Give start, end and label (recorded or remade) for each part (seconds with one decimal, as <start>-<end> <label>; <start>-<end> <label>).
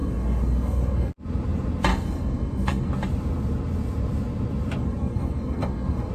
0.0-1.1 remade; 1.1-1.9 recorded; 1.9-2.9 remade; 2.9-4.8 recorded; 4.8-6.1 remade